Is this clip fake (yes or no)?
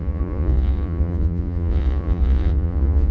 yes